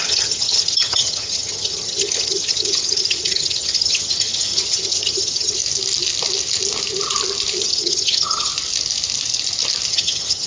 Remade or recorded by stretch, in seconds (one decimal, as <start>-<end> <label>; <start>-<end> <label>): 0.0-5.6 remade; 5.6-7.6 recorded; 7.6-8.5 remade; 8.5-9.9 recorded; 9.9-10.5 remade